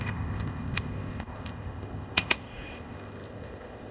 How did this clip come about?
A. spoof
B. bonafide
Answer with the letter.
A